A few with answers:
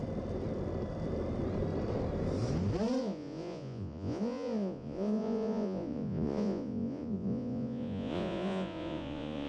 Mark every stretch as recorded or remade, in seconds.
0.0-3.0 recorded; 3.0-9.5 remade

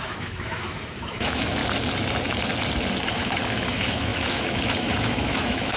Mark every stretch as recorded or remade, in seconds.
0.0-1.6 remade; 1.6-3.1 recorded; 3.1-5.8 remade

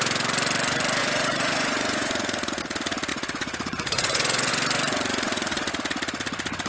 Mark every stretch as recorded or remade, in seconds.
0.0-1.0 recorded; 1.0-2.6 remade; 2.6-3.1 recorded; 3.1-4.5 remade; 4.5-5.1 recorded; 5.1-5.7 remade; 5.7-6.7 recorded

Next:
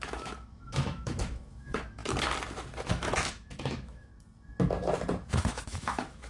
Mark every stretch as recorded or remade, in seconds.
0.0-2.0 remade; 2.0-2.9 recorded; 2.9-4.1 remade; 4.1-5.3 recorded; 5.3-6.3 remade

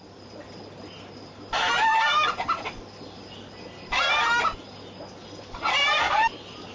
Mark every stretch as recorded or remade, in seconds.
0.0-6.7 recorded

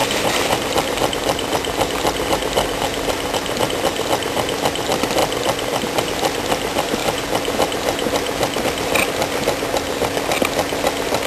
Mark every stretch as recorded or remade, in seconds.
0.0-11.3 recorded

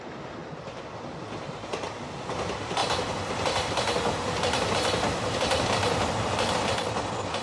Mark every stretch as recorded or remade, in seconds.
0.0-7.4 recorded

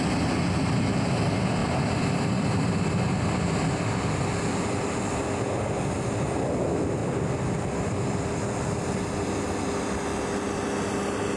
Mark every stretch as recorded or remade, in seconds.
0.0-1.6 recorded; 1.6-4.1 remade; 4.1-11.4 recorded